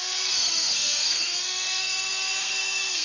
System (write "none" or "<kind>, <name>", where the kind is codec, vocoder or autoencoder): codec, SNAC